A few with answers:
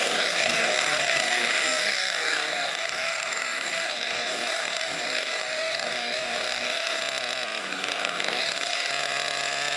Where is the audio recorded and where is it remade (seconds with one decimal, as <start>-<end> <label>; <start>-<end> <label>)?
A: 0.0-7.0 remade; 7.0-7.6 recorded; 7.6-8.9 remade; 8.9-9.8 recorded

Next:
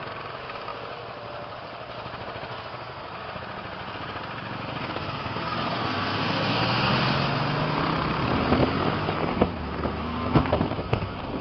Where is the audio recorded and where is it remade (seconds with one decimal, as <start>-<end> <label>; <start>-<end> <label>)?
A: 0.0-2.5 recorded; 2.5-3.4 remade; 3.4-4.8 recorded; 4.8-6.9 remade; 6.9-9.3 recorded; 9.3-11.4 remade

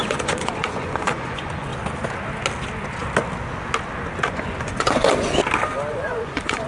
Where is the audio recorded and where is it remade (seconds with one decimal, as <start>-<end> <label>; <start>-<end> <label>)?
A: 0.0-1.7 remade; 1.7-4.3 recorded; 4.3-5.3 remade; 5.3-5.9 recorded; 5.9-6.7 remade